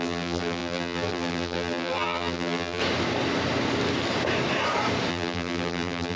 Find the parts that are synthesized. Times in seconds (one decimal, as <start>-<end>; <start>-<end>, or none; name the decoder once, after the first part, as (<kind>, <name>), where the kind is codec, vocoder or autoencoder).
0.0-2.8 (vocoder, BigVGAN v2); 5.1-6.2

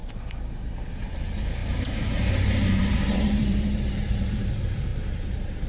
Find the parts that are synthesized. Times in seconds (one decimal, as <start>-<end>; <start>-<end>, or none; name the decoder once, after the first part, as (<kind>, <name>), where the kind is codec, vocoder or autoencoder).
1.1-5.7 (vocoder, BigVGAN v2)

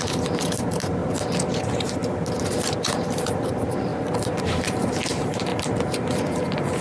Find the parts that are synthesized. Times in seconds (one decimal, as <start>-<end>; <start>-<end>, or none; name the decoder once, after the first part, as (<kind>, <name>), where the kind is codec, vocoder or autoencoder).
0.0-1.0 (vocoder, BigVGAN v2); 1.5-2.0; 2.5-3.9; 4.4-5.5